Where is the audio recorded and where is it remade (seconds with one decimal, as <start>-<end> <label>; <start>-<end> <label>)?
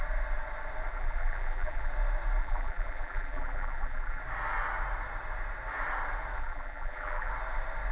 0.0-0.9 recorded; 0.9-1.9 remade; 1.9-2.4 recorded; 2.4-4.2 remade; 4.2-6.4 recorded; 6.4-7.3 remade; 7.3-7.9 recorded